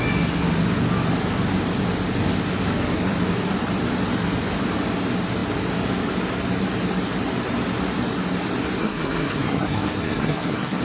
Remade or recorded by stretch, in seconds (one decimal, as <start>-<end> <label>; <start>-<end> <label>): 0.0-8.8 recorded; 8.8-10.8 remade